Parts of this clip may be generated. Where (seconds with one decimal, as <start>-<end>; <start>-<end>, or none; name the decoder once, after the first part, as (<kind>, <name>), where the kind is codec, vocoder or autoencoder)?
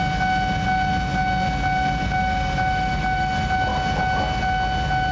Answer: none